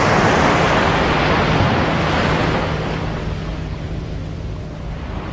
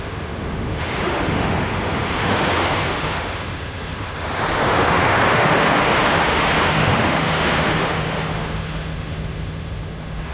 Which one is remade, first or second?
second